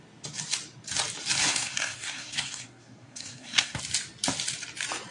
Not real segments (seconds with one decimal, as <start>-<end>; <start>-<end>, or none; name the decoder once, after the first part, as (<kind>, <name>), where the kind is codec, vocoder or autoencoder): 1.4-3.8 (codec, SNAC)